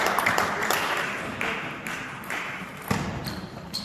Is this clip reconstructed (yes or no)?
no